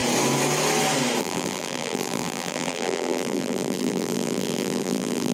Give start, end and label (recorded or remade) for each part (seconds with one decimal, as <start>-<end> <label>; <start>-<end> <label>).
0.0-1.2 recorded; 1.2-5.3 remade